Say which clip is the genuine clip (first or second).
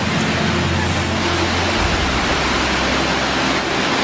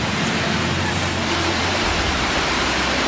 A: first